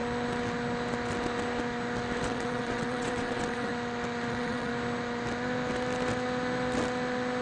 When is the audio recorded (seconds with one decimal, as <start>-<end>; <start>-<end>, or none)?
0.0-2.2; 3.7-4.3; 4.7-7.4